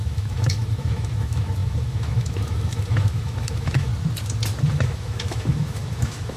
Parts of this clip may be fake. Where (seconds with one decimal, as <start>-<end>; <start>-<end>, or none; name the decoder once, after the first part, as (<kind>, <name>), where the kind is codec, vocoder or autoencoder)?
0.0-3.9 (autoencoder, DAC-VAE); 4.7-6.4